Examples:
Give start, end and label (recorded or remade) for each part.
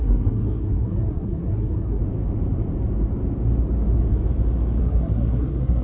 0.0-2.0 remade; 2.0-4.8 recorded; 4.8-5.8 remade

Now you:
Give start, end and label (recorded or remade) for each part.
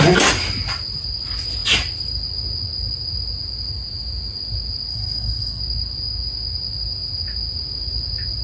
0.0-4.9 recorded; 4.9-5.6 remade; 5.6-8.4 recorded